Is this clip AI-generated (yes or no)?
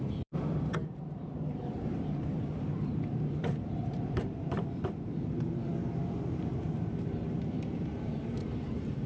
yes